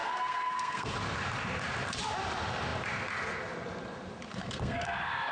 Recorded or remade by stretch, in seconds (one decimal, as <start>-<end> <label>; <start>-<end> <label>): 0.0-0.9 remade; 0.9-4.3 recorded; 4.3-5.3 remade